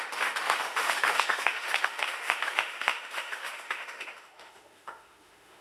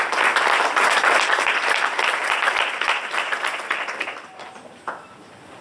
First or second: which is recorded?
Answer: second